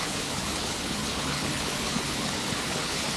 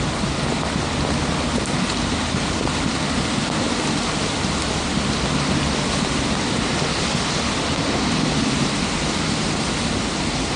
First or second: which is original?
second